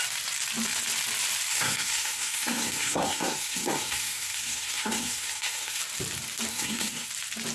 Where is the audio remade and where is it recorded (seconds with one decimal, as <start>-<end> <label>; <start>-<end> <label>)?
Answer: 0.0-1.5 recorded; 1.5-5.8 remade; 5.8-6.5 recorded; 6.5-7.1 remade; 7.1-7.5 recorded